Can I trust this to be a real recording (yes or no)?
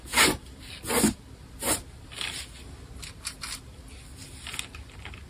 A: yes